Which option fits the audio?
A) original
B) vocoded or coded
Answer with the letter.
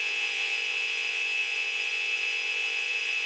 B